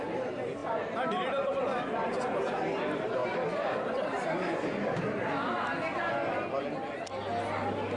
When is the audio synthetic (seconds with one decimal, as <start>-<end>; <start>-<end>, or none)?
3.2-5.0